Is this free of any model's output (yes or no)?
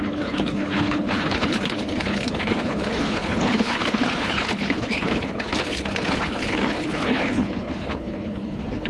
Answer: no